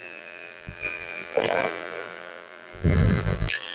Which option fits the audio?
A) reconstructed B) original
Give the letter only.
A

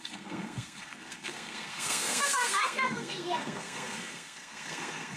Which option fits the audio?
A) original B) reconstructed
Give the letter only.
B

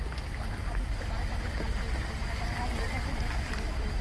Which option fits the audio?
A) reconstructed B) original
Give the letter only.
B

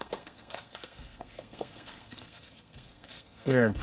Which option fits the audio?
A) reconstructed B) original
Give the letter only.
A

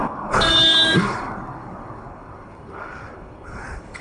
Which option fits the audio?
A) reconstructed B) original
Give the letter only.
A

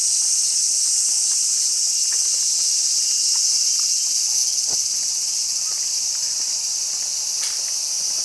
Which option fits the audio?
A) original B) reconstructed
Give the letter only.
A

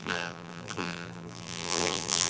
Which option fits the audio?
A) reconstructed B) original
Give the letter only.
A